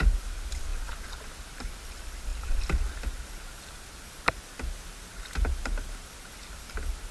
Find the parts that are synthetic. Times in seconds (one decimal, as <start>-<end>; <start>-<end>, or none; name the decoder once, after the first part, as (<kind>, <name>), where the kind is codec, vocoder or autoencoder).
none